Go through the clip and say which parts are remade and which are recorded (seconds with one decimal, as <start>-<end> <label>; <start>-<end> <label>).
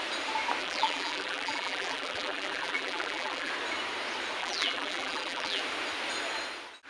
0.0-0.6 recorded; 0.6-3.5 remade; 3.5-4.4 recorded; 4.4-5.6 remade; 5.6-6.9 recorded